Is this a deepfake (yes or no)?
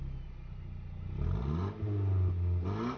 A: no